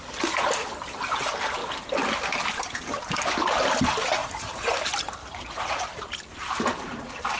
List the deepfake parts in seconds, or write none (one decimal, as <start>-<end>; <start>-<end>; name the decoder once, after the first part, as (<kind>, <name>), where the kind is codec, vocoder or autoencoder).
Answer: 4.2-4.8 (vocoder, Vocos); 5.2-5.8